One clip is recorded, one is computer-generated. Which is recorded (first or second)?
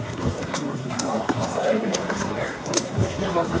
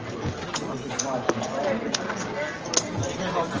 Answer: second